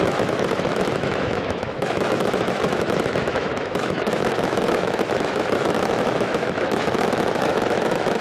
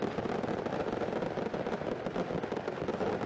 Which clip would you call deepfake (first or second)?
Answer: first